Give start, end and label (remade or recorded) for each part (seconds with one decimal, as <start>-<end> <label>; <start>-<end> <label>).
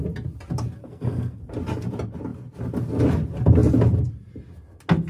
0.0-0.8 recorded; 0.8-1.4 remade; 1.4-5.1 recorded